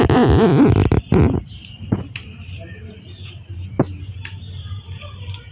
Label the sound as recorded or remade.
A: remade